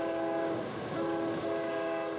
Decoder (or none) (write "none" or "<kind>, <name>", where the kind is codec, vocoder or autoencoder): codec, DAC